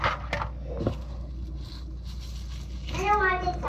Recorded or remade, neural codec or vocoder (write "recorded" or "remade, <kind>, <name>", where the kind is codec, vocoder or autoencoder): recorded